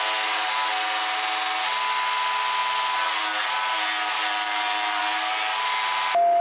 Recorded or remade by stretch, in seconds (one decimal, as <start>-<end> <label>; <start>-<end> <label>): 0.0-6.4 recorded